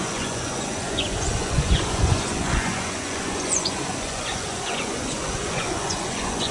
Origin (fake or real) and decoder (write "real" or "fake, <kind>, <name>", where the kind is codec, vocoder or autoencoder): fake, vocoder, Vocos